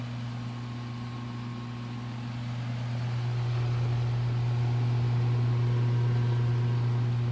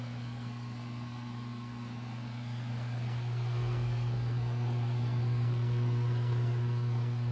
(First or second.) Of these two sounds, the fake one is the second